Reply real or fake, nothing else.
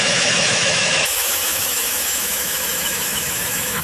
fake